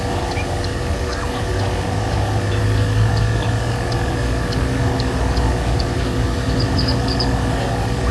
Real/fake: fake